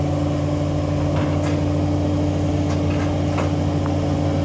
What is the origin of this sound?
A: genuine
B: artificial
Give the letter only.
A